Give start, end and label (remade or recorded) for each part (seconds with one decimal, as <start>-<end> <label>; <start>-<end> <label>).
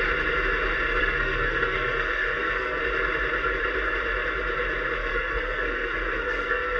0.0-1.0 recorded; 1.0-2.8 remade; 2.8-5.0 recorded; 5.0-6.8 remade